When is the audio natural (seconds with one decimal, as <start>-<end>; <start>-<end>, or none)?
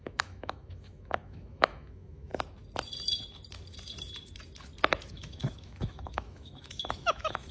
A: 2.3-5.1